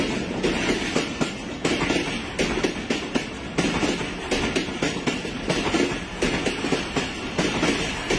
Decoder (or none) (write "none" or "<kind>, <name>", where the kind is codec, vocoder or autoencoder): none